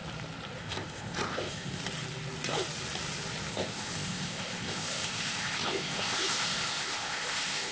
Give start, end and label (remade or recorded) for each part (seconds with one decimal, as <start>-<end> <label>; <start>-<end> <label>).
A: 0.0-0.6 recorded; 0.6-1.8 remade; 1.8-3.5 recorded; 3.5-7.7 remade